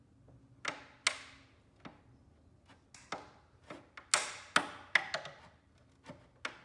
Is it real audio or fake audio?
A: real